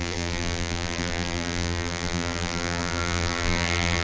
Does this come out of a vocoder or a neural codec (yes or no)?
yes